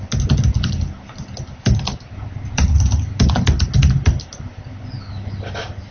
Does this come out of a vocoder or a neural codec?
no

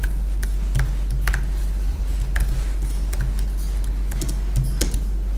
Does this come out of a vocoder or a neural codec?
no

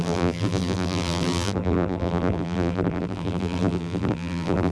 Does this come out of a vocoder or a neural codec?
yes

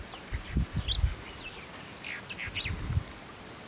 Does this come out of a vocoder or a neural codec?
no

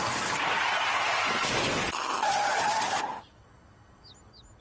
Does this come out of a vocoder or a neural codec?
no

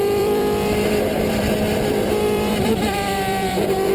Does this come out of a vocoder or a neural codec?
yes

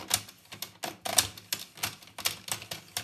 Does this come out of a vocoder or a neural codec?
no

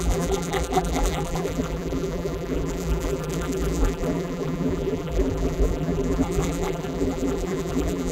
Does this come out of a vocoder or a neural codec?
yes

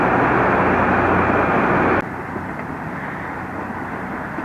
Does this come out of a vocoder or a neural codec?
no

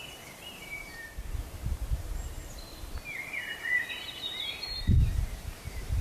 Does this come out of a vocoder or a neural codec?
yes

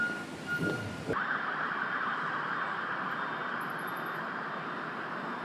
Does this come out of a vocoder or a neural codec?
no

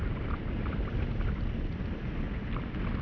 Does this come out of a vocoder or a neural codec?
no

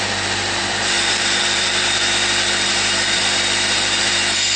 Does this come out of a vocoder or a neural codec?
yes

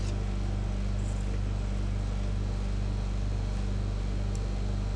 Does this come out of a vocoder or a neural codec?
no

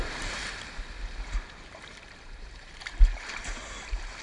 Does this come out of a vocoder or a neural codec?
yes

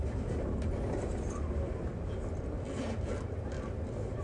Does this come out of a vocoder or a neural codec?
no